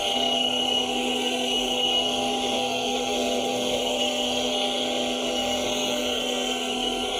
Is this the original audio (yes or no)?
no